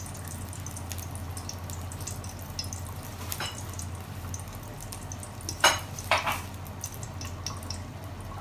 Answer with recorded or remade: recorded